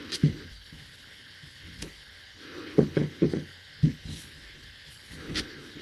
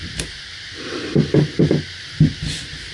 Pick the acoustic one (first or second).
second